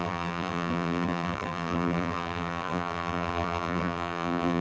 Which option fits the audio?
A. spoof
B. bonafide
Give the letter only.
A